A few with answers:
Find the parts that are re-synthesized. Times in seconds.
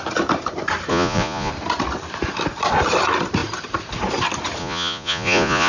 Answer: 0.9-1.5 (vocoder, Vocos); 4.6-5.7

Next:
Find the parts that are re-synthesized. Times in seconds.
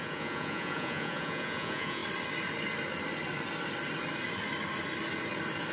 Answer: 0.0-2.0 (vocoder, Vocos)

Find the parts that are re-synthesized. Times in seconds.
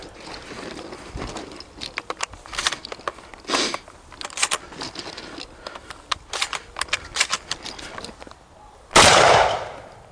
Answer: none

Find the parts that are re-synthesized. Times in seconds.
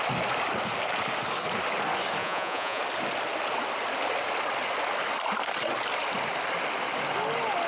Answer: 2.2-2.8 (vocoder, Vocos)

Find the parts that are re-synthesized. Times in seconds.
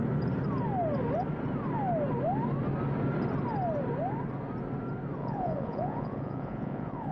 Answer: 5.2-7.1 (vocoder, Vocos)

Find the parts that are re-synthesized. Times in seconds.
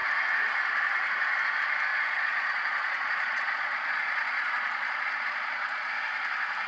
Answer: 1.9-5.9 (vocoder, Vocos)